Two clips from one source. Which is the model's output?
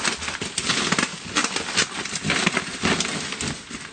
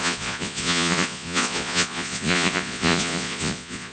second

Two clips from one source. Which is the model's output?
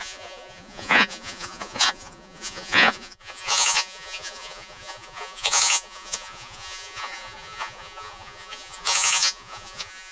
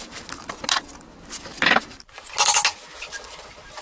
first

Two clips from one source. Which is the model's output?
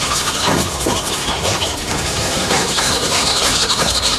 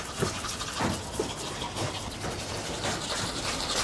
first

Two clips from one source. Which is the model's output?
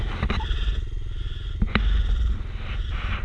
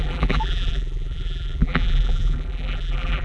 second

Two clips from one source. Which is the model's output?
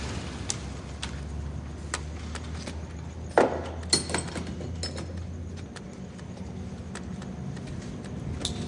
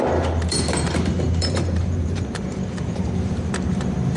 second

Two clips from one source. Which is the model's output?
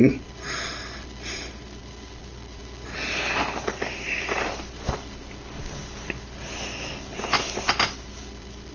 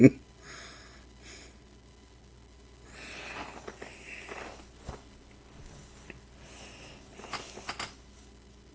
first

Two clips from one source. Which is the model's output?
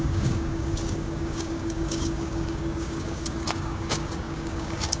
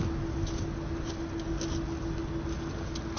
first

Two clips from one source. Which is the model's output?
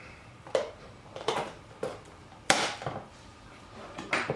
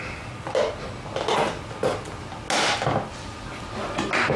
first